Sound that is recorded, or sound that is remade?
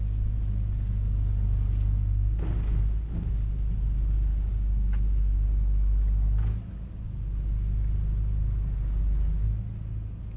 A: recorded